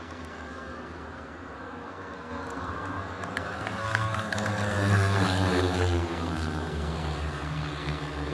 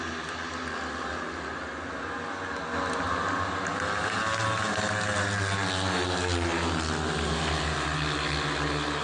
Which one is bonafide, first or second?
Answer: second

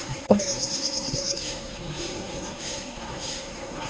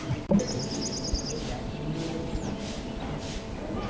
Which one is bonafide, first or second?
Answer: second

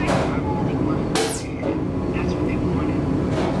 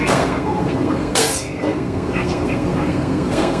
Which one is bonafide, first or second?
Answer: first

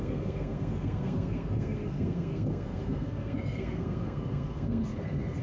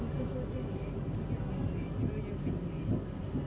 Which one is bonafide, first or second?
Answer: second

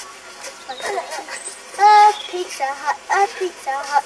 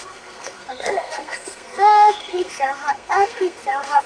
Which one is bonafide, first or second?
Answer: first